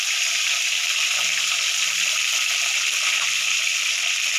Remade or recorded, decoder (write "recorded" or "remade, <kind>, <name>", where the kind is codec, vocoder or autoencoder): remade, vocoder, BigVGAN v2